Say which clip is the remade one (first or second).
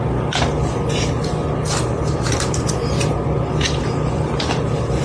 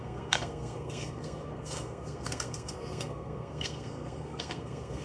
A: second